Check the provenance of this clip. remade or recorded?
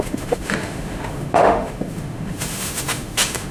remade